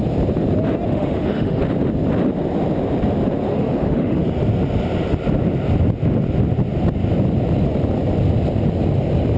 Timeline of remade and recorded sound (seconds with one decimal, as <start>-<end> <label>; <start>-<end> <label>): 0.0-0.9 recorded; 0.9-1.6 remade; 1.6-3.5 recorded; 3.5-4.2 remade; 4.2-9.4 recorded